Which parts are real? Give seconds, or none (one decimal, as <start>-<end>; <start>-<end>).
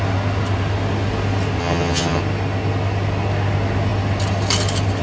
0.0-1.6; 2.2-5.0